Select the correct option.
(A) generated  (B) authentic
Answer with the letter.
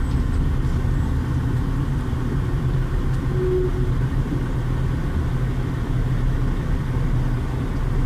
B